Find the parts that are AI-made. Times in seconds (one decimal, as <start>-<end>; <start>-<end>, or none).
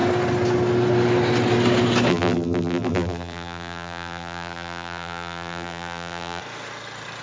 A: 2.1-6.4